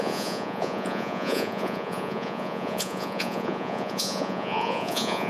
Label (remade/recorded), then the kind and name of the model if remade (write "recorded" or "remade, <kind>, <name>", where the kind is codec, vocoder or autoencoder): remade, vocoder, Vocos